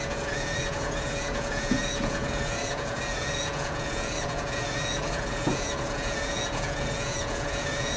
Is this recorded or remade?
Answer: remade